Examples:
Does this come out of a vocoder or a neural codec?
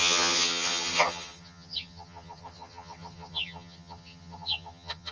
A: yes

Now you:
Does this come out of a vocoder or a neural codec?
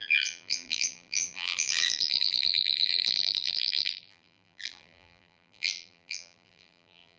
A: yes